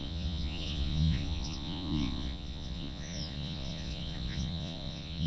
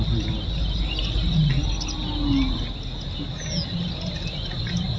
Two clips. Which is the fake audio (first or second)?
first